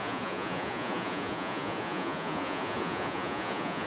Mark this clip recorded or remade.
remade